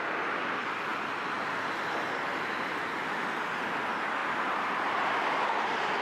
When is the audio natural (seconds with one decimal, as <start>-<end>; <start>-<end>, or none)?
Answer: 0.0-6.0